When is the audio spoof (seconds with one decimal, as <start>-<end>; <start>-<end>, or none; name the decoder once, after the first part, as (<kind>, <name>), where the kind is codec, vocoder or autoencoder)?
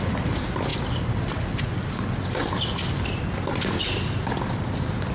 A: none